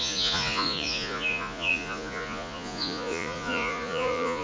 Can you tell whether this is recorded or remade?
remade